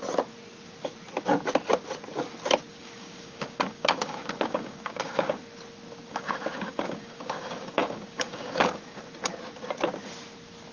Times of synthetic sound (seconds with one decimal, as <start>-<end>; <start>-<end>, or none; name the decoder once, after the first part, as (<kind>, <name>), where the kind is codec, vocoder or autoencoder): 2.8-5.4 (codec, DAC); 6.1-9.0